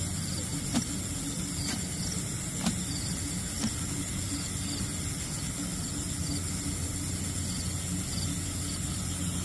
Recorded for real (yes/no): yes